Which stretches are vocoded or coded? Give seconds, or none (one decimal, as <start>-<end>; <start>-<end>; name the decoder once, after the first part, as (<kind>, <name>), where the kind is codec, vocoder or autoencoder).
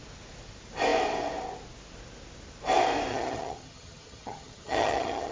3.1-5.3 (vocoder, HiFi-GAN)